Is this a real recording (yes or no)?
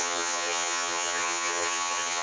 no